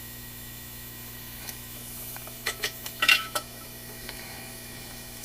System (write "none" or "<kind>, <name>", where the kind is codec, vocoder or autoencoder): autoencoder, DAC-VAE